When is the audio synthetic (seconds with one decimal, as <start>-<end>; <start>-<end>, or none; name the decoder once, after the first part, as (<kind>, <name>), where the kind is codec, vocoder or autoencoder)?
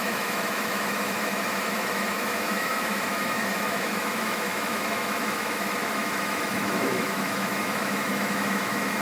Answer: 0.0-9.0 (autoencoder, DAC-VAE)